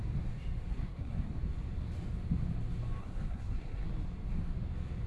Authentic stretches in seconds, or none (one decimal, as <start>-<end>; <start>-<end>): 0.0-0.7; 1.3-3.0; 3.9-5.1